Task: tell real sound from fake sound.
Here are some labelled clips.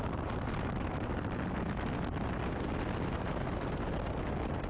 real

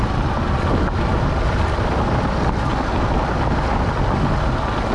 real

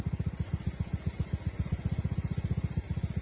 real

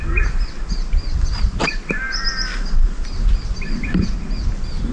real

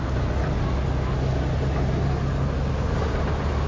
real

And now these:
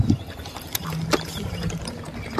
real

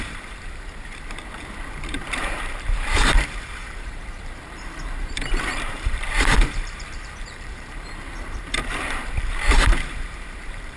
fake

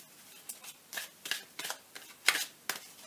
real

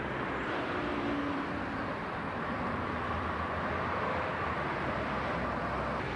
fake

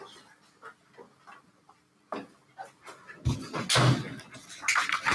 real